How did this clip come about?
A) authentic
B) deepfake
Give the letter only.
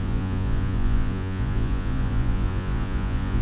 B